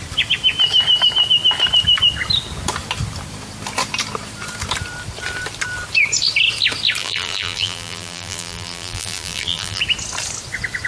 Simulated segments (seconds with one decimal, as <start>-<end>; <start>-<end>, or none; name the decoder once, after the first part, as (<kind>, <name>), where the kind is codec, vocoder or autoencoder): 7.0-9.8 (vocoder, BigVGAN v2)